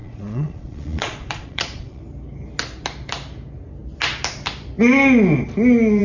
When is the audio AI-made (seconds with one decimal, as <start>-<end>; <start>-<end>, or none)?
0.0-2.0